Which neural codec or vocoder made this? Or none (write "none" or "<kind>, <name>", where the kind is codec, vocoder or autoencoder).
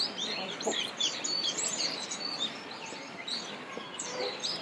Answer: none